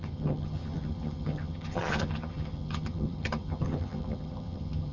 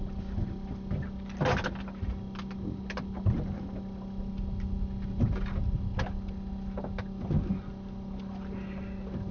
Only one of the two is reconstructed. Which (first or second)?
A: first